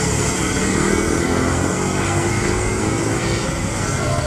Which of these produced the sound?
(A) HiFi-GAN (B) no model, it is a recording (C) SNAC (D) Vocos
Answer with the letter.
C